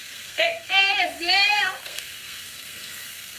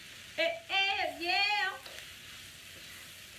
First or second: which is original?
second